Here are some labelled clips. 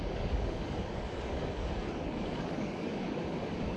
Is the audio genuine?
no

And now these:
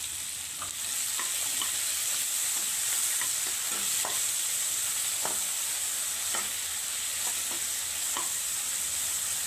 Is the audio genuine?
yes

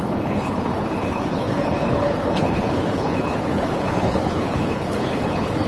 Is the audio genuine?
no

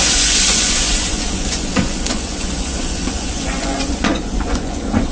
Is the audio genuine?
no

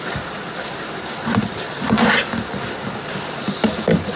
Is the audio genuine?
yes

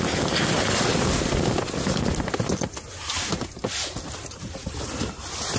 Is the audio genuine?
yes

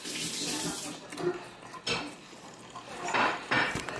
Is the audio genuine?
yes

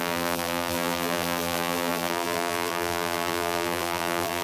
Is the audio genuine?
no